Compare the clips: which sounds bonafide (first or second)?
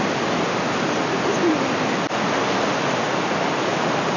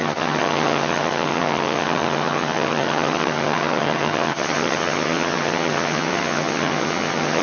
first